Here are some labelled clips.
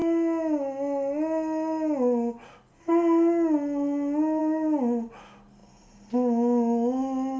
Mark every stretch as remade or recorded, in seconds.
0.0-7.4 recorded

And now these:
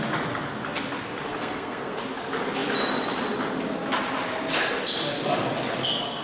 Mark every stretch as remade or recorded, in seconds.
0.0-1.3 recorded; 1.3-2.0 remade; 2.0-6.2 recorded

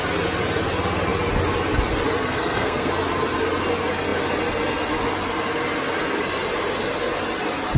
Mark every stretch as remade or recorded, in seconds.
0.0-2.2 recorded; 2.2-2.9 remade; 2.9-7.8 recorded

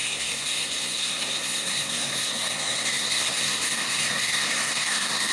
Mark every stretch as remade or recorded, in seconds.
0.0-5.3 remade

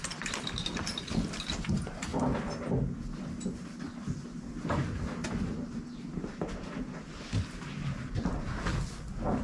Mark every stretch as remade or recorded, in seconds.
0.0-9.4 recorded